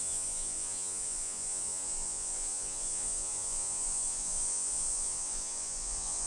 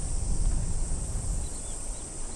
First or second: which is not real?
first